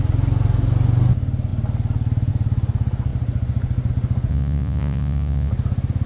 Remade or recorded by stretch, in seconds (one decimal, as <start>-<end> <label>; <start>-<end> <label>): 0.0-4.3 recorded; 4.3-5.5 remade; 5.5-6.1 recorded

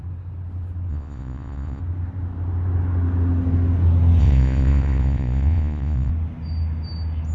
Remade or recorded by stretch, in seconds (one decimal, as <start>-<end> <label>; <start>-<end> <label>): 0.0-0.9 recorded; 0.9-1.8 remade; 1.8-4.2 recorded; 4.2-6.1 remade; 6.1-7.3 recorded

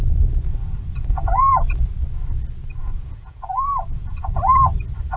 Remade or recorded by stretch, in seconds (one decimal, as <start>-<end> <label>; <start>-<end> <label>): 0.0-0.6 recorded; 0.6-1.5 remade; 1.5-2.8 recorded; 2.8-4.4 remade; 4.4-5.2 recorded

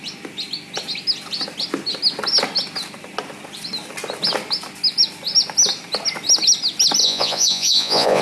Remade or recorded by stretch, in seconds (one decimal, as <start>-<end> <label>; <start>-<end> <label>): 0.0-7.0 recorded; 7.0-8.2 remade

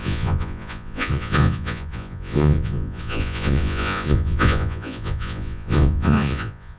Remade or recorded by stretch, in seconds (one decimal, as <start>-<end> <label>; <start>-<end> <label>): 0.0-6.8 remade